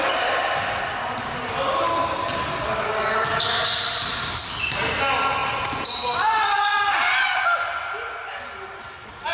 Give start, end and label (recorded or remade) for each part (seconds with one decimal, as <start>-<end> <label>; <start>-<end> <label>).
0.0-9.3 recorded